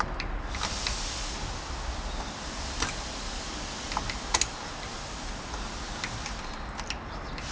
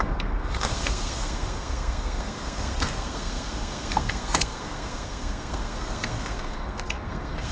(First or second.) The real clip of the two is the first